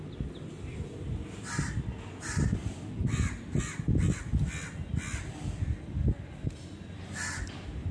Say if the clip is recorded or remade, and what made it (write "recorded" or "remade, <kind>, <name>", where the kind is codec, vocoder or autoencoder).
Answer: recorded